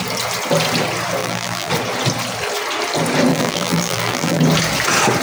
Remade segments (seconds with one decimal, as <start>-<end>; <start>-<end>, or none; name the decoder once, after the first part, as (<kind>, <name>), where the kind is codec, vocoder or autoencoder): 1.2-1.7 (vocoder, BigVGAN v2); 3.3-4.4

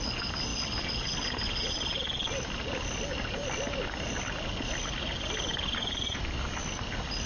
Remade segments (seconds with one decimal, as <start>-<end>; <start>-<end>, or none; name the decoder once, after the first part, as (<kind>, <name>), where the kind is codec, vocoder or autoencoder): 5.5-6.2 (vocoder, BigVGAN v2)

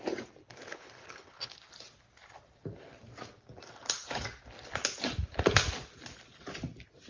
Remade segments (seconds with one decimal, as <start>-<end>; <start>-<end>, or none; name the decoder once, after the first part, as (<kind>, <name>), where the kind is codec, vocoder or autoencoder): 0.4-1.6 (codec, HILCodec)

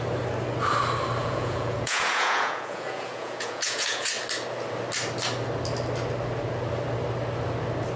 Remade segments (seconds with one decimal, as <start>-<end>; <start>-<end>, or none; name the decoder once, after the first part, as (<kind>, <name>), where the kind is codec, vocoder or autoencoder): 1.2-4.1 (vocoder, Vocos)

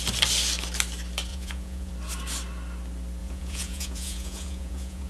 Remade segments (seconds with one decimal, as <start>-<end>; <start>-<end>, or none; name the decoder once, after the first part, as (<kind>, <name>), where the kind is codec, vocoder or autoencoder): 1.3-1.9 (vocoder, Vocos); 3.2-5.1

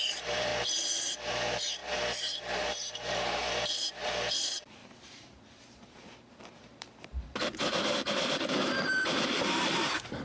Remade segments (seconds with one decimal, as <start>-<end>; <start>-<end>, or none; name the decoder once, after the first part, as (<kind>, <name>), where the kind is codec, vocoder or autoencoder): 0.0-0.5 (vocoder, BigVGAN v2); 1.3-10.2